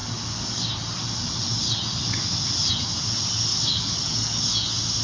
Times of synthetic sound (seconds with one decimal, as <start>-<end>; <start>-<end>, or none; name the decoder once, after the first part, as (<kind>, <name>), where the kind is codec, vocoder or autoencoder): 3.5-4.4 (codec, DAC)